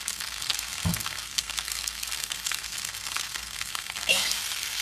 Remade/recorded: remade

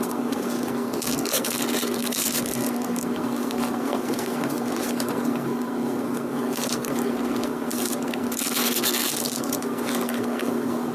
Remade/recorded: remade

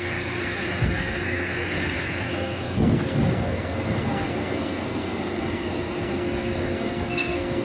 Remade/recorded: remade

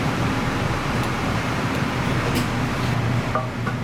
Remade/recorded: recorded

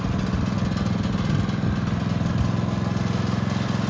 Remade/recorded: recorded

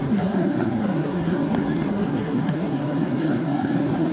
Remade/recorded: remade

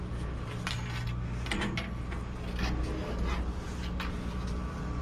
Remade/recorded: recorded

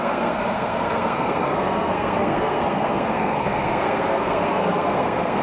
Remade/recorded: remade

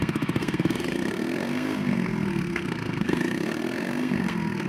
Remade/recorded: remade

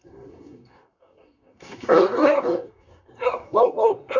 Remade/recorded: remade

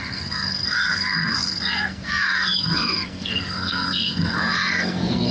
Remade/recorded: remade